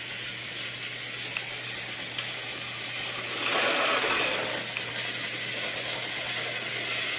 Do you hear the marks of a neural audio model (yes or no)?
no